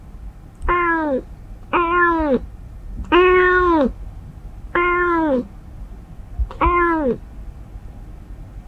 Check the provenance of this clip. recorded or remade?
recorded